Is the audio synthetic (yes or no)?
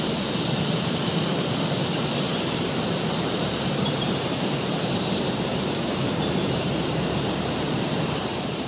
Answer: yes